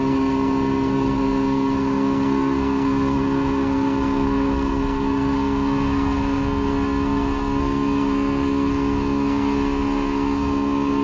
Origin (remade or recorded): remade